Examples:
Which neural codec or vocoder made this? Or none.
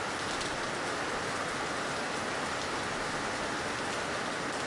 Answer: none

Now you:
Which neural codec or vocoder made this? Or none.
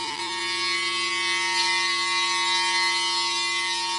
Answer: none